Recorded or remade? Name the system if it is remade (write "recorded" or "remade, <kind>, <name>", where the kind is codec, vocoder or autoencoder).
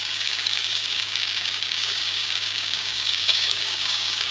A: remade, codec, DAC